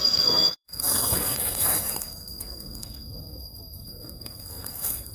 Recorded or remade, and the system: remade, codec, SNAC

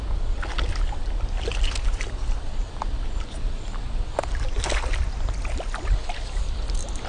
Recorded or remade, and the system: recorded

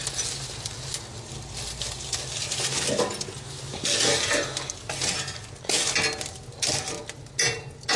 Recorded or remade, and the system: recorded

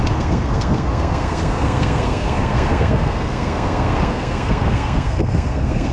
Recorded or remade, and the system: remade, codec, SNAC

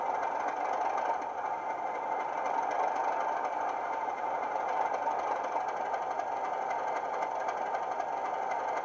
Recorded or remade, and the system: recorded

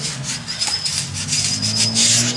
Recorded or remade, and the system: recorded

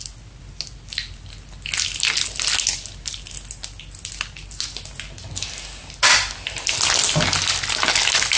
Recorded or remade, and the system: recorded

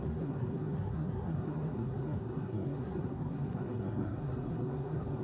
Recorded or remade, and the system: remade, codec, SNAC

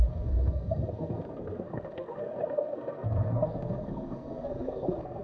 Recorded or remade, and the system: remade, codec, SNAC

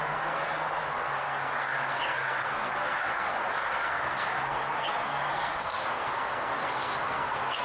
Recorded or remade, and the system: remade, codec, SNAC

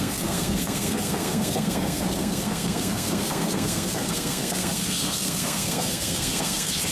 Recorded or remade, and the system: remade, codec, SNAC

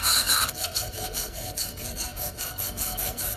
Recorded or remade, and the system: remade, codec, SNAC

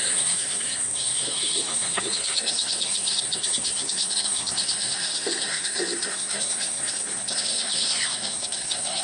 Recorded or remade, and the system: remade, codec, SNAC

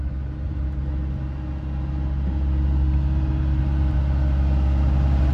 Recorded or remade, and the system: recorded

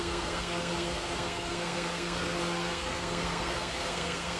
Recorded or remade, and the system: remade, codec, SNAC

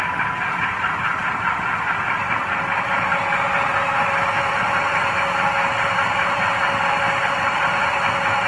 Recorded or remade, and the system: recorded